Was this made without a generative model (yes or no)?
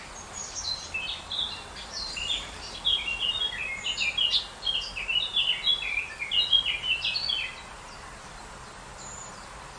yes